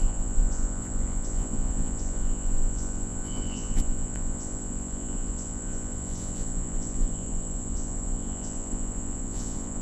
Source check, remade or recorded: remade